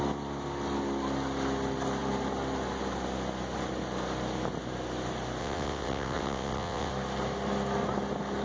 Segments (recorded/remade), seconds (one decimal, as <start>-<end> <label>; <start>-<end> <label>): 0.0-5.4 recorded; 5.4-6.9 remade; 6.9-8.4 recorded